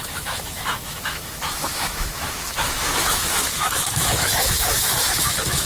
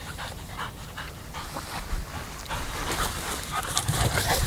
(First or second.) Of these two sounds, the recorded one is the second